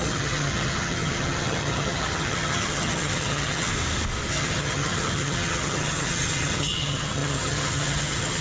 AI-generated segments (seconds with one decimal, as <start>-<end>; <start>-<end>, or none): 0.0-3.7; 4.3-8.4